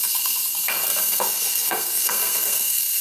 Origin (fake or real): fake